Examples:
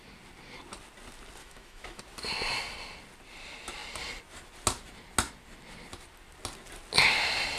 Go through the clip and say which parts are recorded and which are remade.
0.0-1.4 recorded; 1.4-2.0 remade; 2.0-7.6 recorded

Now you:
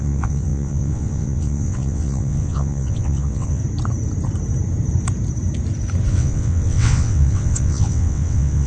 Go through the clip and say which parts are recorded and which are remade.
0.0-3.6 remade; 3.6-6.1 recorded; 6.1-8.7 remade

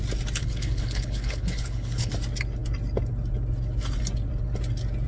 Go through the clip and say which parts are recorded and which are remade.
0.0-0.4 recorded; 0.4-2.1 remade; 2.1-5.1 recorded

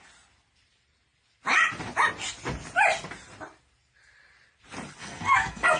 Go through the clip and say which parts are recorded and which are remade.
0.0-5.0 recorded; 5.0-5.8 remade

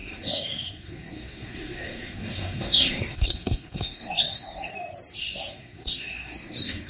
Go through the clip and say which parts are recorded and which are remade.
0.0-4.7 remade; 4.7-5.2 recorded; 5.2-6.9 remade

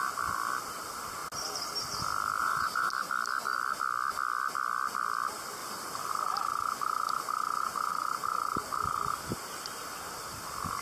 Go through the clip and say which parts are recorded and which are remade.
0.0-2.4 recorded; 2.4-2.9 remade; 2.9-7.9 recorded; 7.9-9.1 remade; 9.1-10.8 recorded

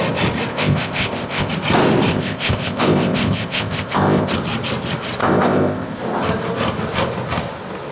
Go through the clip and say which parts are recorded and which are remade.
0.0-0.5 recorded; 0.5-1.5 remade; 1.5-2.1 recorded; 2.1-4.3 remade; 4.3-5.2 recorded; 5.2-6.0 remade; 6.0-7.9 recorded

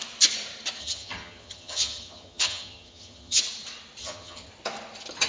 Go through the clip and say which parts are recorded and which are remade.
0.0-0.8 recorded; 0.8-3.4 remade; 3.4-4.0 recorded; 4.0-4.5 remade; 4.5-5.3 recorded